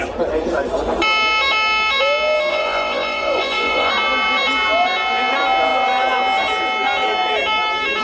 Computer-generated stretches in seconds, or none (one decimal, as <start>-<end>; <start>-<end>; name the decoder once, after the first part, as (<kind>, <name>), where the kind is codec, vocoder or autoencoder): 2.5-3.9 (vocoder, Vocos)